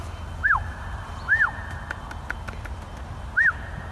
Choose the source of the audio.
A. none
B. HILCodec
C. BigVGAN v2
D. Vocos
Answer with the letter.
A